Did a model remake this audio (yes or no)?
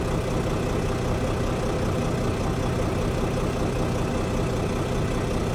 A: no